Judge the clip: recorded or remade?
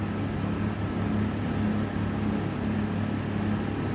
recorded